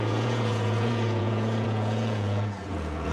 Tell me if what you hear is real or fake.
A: fake